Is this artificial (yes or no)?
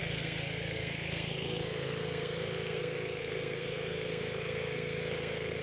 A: yes